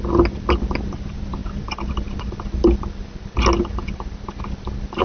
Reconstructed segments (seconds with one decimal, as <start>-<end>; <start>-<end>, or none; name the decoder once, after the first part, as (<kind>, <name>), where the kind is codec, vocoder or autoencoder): none